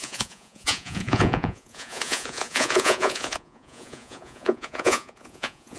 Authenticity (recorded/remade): remade